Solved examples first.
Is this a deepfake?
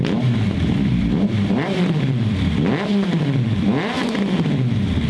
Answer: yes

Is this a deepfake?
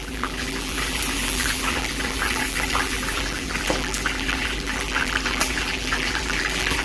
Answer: yes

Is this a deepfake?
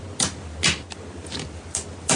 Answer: no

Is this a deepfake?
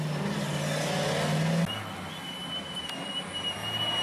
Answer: no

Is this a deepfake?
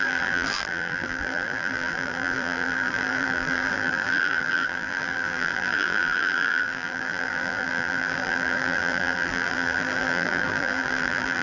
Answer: yes